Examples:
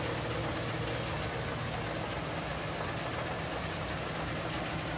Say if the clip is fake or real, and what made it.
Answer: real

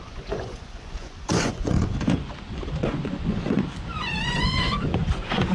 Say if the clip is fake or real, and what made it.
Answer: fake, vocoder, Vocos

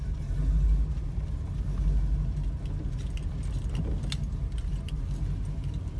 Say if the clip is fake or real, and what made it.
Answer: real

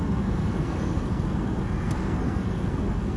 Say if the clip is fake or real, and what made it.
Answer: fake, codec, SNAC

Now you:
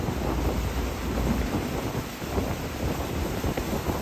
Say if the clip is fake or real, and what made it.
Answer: real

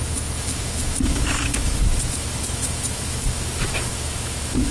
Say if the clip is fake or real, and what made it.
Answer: fake, autoencoder, DAC-VAE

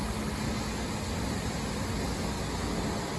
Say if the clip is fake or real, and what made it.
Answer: real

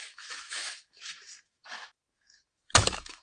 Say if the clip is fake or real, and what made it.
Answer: fake, autoencoder, DAC-VAE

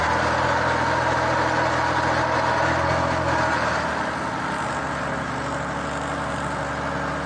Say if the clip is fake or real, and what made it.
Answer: real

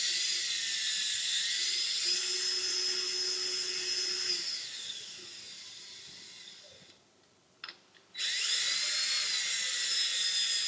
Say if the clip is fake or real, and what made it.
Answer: real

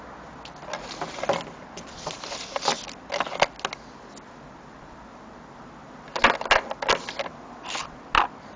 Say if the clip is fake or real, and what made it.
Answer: real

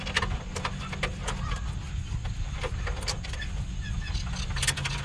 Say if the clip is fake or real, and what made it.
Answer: real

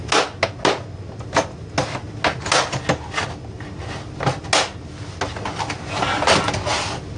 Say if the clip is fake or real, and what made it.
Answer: real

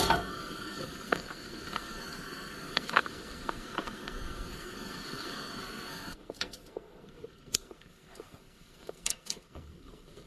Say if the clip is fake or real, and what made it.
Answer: fake, codec, SNAC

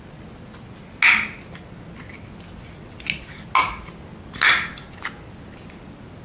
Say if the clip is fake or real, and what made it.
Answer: real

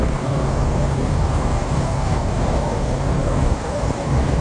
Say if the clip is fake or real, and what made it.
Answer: fake, codec, DAC